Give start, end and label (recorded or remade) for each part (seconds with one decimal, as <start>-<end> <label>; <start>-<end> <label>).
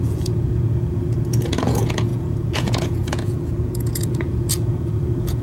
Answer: 0.0-5.4 remade